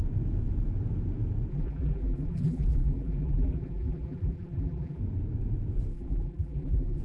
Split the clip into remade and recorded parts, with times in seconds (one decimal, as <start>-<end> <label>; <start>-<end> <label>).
0.0-1.5 recorded; 1.5-5.0 remade; 5.0-5.9 recorded; 5.9-7.0 remade